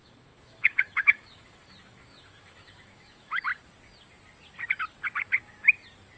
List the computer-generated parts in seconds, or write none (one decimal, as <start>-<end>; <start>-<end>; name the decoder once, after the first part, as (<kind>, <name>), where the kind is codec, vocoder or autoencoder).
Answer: 0.0-3.5 (autoencoder, DAC-VAE)